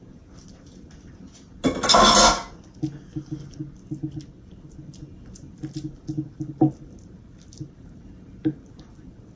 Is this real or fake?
real